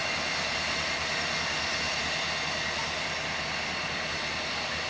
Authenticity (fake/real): real